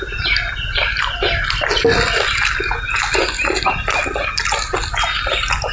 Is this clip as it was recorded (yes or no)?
yes